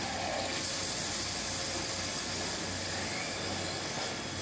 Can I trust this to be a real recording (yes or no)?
yes